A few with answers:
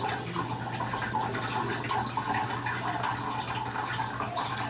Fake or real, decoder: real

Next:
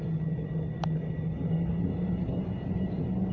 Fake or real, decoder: real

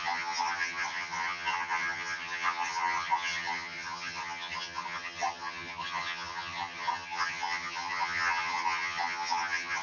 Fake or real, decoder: fake, vocoder, HiFi-GAN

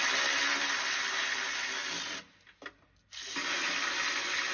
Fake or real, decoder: real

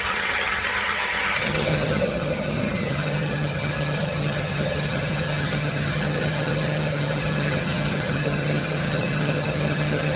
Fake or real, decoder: fake, vocoder, HiFi-GAN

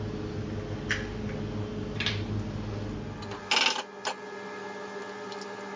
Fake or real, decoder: real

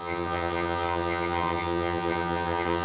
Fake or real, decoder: fake, vocoder, HiFi-GAN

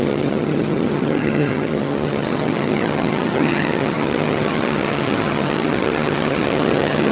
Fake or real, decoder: fake, vocoder, HiFi-GAN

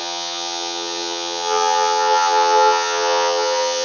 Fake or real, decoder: fake, vocoder, HiFi-GAN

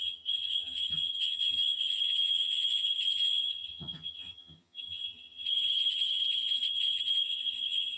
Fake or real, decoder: fake, vocoder, HiFi-GAN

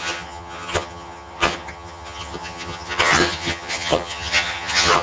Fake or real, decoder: fake, vocoder, HiFi-GAN